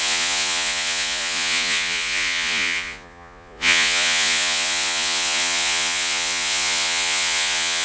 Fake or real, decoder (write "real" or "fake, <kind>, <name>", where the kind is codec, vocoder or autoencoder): fake, vocoder, Vocos